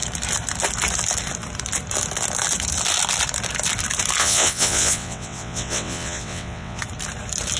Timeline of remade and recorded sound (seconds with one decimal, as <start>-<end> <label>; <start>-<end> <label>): 0.0-4.2 recorded; 4.2-6.8 remade; 6.8-7.6 recorded

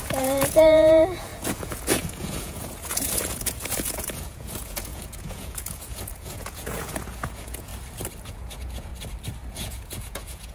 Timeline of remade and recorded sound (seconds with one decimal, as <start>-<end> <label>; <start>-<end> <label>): 0.0-7.7 remade; 7.7-8.2 recorded; 8.2-8.9 remade; 8.9-9.5 recorded; 9.5-10.5 remade

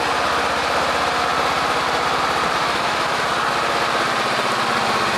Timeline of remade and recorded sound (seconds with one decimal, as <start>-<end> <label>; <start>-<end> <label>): 0.0-2.6 recorded; 2.6-3.2 remade; 3.2-5.2 recorded

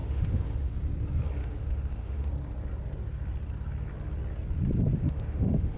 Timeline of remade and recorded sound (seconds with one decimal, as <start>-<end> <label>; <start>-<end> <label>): 0.0-0.7 remade; 0.7-1.4 recorded; 1.4-2.3 remade; 2.3-5.0 recorded; 5.0-5.8 remade

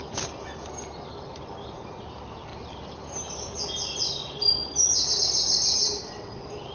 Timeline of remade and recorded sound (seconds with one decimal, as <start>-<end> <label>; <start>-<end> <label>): 0.0-6.7 recorded

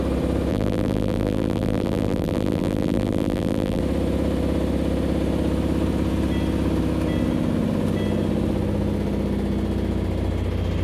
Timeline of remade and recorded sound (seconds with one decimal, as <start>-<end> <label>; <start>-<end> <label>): 0.0-0.5 recorded; 0.5-3.8 remade; 3.8-10.8 recorded